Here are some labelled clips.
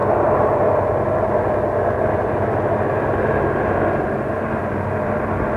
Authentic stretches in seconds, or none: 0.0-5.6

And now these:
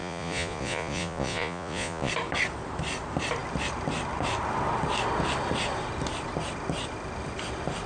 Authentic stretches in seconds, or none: 2.1-7.9

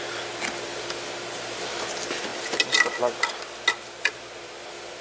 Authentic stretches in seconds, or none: 0.0-5.0